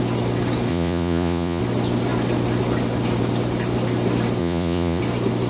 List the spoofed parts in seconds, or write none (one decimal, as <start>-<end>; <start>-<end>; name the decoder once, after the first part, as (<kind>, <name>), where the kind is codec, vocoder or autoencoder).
0.7-1.6 (vocoder, Vocos); 4.4-5.0